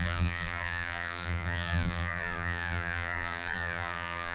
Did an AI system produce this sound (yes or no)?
yes